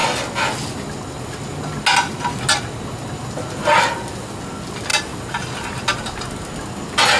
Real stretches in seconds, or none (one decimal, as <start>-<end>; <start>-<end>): 0.0-7.2

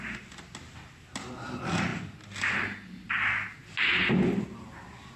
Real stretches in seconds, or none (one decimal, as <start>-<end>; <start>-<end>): 0.0-5.2

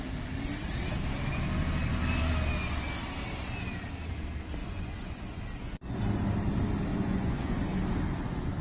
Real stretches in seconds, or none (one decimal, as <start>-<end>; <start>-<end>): 0.0-4.6; 6.0-6.9; 7.6-8.6

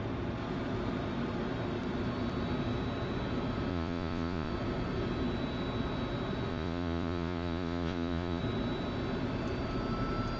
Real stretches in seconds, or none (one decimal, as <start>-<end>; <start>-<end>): 0.0-3.7; 4.5-6.5; 8.4-10.4

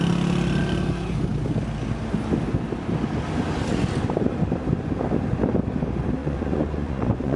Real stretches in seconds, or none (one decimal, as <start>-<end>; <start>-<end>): 0.0-6.2

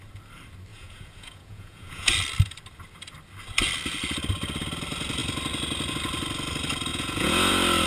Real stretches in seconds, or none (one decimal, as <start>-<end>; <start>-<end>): 0.0-0.7; 2.1-6.9; 7.5-7.9

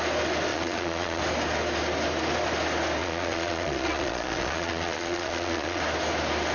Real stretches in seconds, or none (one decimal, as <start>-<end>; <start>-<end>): 0.0-0.5; 1.2-3.0; 5.8-6.5

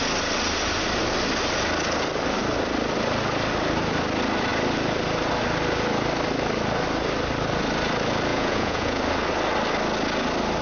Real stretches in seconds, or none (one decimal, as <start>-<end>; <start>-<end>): 0.0-8.3; 9.0-10.6